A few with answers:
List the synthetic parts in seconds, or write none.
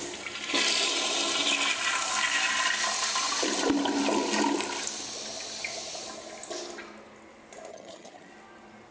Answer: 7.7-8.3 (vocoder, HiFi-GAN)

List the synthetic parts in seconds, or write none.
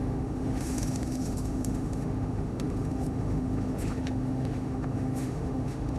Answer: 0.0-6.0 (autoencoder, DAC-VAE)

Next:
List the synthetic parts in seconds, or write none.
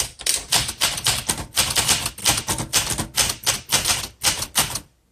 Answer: 0.0-2.2 (vocoder, BigVGAN v2); 3.5-5.1